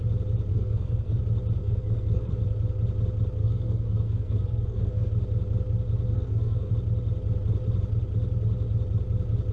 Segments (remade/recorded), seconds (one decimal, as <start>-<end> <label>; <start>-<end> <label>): 0.0-0.5 recorded; 0.5-1.2 remade; 1.2-1.6 recorded; 1.6-2.3 remade; 2.3-3.4 recorded; 3.4-5.1 remade; 5.1-6.1 recorded; 6.1-6.7 remade; 6.7-9.5 recorded